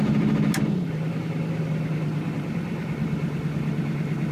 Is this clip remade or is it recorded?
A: recorded